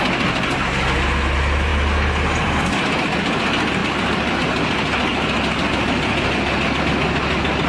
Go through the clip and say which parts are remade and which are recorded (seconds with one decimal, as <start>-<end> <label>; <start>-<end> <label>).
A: 0.0-7.7 recorded